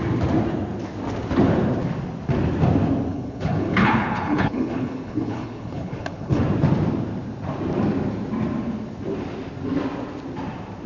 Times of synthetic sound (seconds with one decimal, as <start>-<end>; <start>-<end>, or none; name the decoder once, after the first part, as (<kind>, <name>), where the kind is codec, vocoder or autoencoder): 3.1-6.4 (codec, HILCodec)